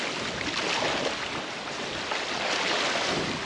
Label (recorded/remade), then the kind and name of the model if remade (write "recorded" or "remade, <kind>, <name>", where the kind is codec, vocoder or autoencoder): recorded